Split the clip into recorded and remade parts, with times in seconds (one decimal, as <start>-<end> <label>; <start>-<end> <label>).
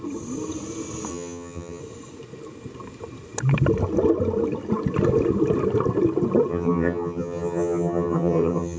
0.0-1.1 recorded; 1.1-1.8 remade; 1.8-6.5 recorded; 6.5-8.8 remade